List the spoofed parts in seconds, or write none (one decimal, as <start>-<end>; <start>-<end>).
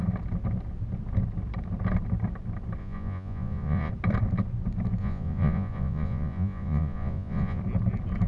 2.8-3.9; 5.0-7.6